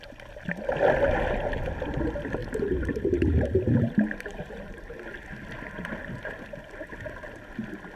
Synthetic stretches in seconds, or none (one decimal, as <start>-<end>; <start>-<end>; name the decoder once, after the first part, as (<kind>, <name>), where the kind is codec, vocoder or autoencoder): 2.4-5.0 (vocoder, BigVGAN v2)

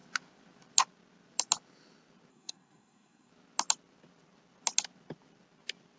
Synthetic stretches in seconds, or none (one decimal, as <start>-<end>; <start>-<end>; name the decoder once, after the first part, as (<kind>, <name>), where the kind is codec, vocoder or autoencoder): 2.3-3.3 (codec, SNAC)

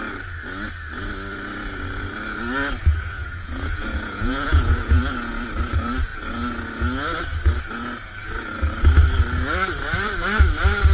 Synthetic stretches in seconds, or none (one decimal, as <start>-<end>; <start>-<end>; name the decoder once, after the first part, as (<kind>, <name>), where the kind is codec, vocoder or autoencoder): 3.2-5.0 (vocoder, Vocos)